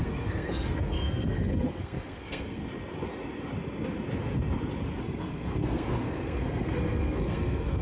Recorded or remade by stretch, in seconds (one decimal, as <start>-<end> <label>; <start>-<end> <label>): 0.0-2.6 remade; 2.6-5.0 recorded; 5.0-7.8 remade